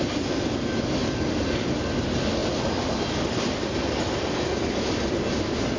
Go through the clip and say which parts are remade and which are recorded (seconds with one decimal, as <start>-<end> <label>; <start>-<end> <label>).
0.0-5.8 recorded